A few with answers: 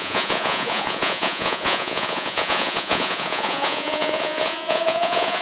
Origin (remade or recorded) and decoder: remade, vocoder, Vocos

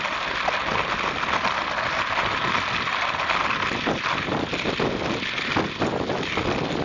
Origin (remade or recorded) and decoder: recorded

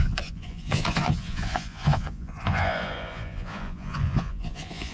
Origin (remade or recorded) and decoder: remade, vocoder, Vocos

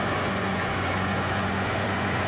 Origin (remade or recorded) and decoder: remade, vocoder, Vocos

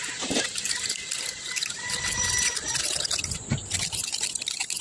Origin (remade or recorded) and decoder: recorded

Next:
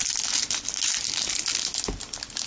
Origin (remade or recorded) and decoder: recorded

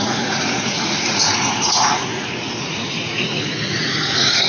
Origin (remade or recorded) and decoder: remade, vocoder, Vocos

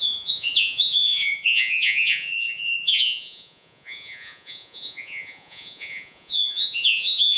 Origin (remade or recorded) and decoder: remade, vocoder, Vocos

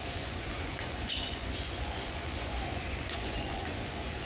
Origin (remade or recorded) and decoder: remade, vocoder, Vocos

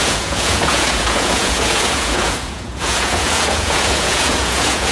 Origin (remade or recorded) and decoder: remade, vocoder, Vocos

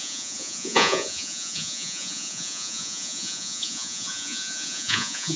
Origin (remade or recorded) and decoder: remade, vocoder, Vocos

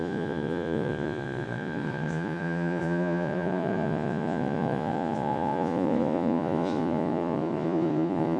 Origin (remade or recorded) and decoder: remade, vocoder, Vocos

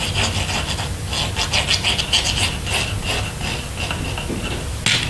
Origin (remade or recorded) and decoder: recorded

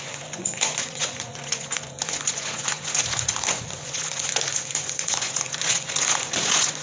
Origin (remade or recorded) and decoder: remade, vocoder, Vocos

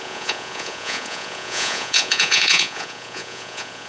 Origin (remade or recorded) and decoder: remade, vocoder, Vocos